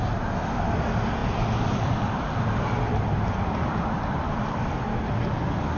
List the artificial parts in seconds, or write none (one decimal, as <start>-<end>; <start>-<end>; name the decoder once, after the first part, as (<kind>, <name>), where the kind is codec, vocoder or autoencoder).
1.2-4.7 (vocoder, BigVGAN v2)